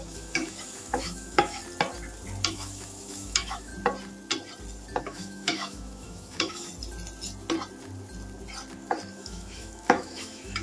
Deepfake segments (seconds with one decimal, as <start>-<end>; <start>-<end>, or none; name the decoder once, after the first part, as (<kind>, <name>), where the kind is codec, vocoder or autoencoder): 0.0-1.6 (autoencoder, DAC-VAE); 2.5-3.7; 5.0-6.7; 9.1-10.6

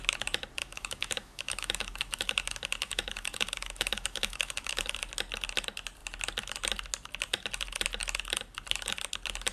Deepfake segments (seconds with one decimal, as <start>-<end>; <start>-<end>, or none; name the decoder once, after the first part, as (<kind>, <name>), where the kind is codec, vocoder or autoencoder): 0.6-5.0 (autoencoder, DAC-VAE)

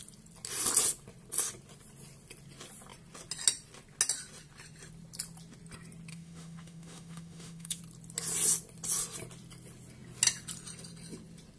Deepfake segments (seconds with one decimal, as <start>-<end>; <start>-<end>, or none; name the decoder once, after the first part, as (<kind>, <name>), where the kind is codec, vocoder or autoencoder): 6.1-7.8 (autoencoder, DAC-VAE)